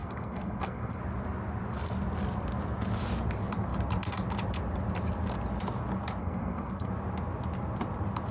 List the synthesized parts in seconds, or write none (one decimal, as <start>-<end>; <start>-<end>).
0.0-1.0; 6.2-6.9